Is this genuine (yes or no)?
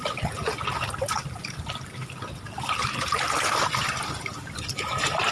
yes